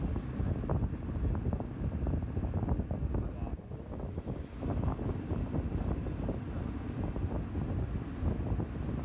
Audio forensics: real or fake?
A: real